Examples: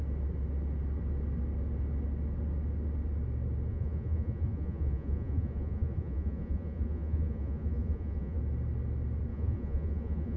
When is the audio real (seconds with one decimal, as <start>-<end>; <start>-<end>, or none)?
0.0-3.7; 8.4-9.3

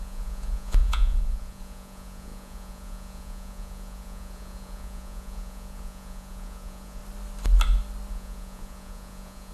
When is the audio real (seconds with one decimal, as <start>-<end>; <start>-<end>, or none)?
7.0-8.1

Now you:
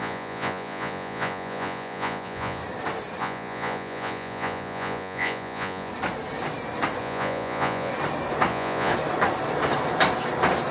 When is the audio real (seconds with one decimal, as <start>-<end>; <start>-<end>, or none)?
2.6-3.2; 5.9-7.0; 7.9-8.5; 8.9-10.7

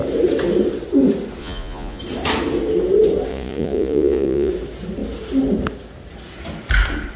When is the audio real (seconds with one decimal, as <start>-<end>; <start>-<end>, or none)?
0.0-1.4; 2.0-3.3; 4.5-7.2